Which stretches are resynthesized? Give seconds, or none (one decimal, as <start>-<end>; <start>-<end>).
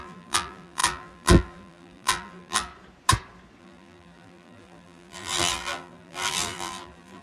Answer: 0.0-2.7; 3.6-7.2